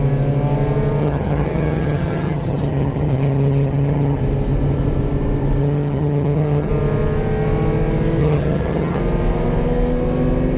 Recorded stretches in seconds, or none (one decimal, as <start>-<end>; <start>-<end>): 0.0-1.0; 4.2-5.6; 6.7-8.2; 9.0-10.6